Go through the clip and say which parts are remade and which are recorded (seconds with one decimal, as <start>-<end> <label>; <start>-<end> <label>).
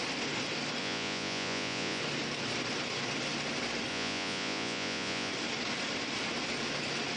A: 0.0-0.8 recorded; 0.8-2.0 remade; 2.0-3.9 recorded; 3.9-5.3 remade; 5.3-7.2 recorded